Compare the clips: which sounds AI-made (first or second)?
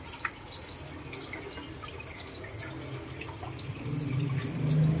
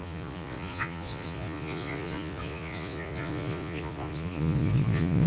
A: second